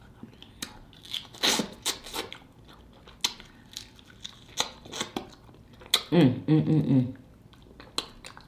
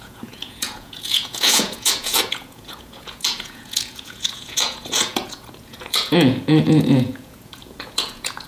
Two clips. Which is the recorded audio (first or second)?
first